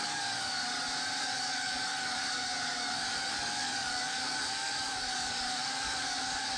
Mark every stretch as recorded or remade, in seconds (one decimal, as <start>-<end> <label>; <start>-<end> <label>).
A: 0.0-0.6 remade; 0.6-1.2 recorded; 1.2-6.6 remade